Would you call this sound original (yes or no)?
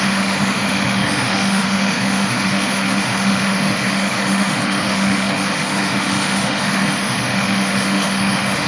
no